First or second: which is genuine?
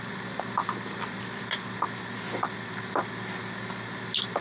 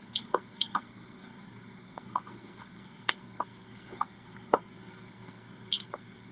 first